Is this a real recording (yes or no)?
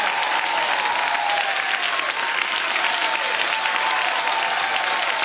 yes